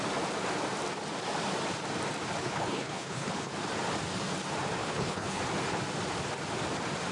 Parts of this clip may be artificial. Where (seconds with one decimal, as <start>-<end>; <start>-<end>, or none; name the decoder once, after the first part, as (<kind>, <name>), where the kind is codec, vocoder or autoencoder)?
2.4-3.5 (codec, HILCodec); 4.8-5.4

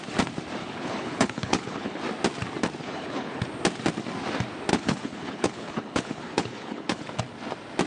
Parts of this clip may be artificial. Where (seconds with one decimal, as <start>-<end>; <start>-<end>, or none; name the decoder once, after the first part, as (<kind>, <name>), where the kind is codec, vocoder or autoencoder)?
0.6-2.0 (codec, HILCodec); 2.8-3.4; 4.7-7.0

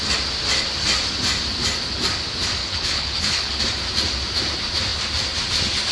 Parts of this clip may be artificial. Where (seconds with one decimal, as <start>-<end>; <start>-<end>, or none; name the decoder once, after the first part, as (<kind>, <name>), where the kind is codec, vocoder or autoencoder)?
2.6-3.6 (codec, HILCodec)

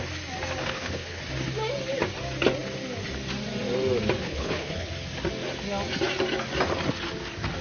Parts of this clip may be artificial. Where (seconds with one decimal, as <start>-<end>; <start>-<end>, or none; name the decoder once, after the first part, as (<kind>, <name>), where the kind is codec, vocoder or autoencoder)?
0.6-1.2 (codec, HILCodec); 4.2-4.9

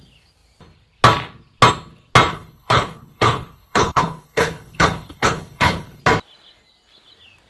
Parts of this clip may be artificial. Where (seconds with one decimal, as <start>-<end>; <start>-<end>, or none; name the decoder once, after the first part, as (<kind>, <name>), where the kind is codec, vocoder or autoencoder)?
2.3-6.0 (codec, HILCodec)